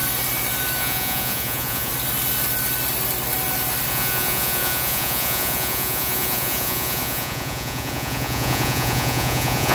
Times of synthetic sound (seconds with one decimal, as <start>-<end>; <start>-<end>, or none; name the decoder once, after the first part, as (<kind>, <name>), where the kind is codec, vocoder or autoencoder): 0.8-1.9 (vocoder, Vocos); 3.9-9.7